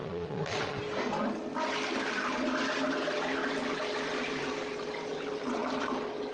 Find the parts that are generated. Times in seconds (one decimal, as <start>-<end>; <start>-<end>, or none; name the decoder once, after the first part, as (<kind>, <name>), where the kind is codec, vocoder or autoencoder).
0.0-0.8 (vocoder, Vocos)